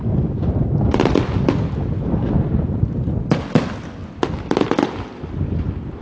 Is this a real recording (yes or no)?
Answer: yes